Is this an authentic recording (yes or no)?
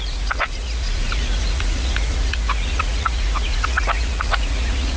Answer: no